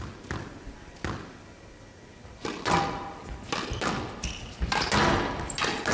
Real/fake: real